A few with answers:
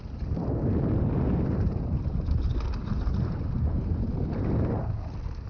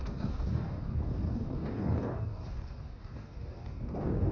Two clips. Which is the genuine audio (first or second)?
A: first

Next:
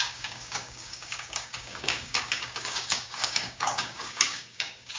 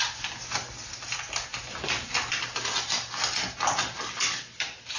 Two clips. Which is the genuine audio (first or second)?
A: second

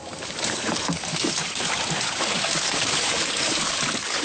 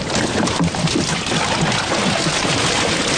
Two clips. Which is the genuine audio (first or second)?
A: second